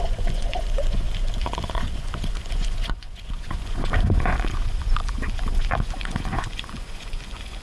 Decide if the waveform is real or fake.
fake